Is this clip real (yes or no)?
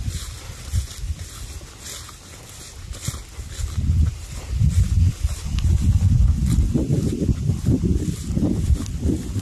yes